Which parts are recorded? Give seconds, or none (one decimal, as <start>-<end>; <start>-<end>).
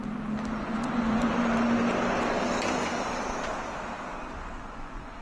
0.0-0.6; 1.2-4.3